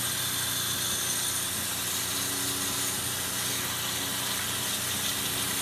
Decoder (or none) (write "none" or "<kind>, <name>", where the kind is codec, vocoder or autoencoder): none